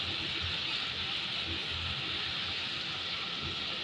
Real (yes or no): yes